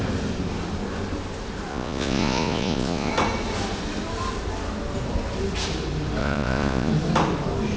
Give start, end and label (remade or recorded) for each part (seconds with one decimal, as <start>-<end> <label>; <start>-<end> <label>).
0.0-1.7 recorded; 1.7-3.1 remade; 3.1-6.2 recorded; 6.2-6.9 remade; 6.9-7.8 recorded